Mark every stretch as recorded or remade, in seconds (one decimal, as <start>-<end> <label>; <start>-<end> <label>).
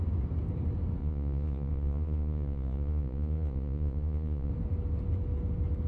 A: 0.0-1.0 recorded; 1.0-4.5 remade; 4.5-5.9 recorded